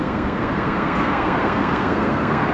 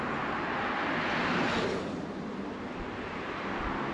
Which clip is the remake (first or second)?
first